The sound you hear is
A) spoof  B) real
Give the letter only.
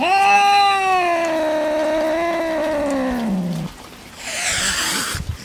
B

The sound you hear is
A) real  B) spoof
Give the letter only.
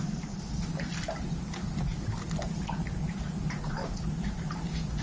A